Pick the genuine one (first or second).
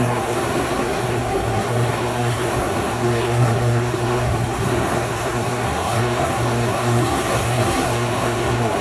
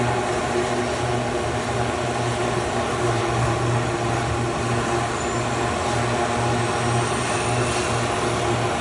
second